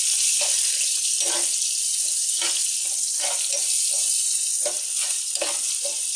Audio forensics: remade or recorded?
recorded